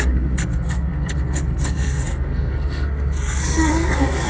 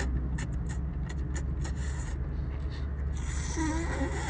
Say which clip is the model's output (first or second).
first